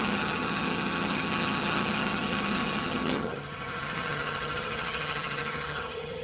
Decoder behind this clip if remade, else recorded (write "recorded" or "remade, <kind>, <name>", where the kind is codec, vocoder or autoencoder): remade, vocoder, HiFi-GAN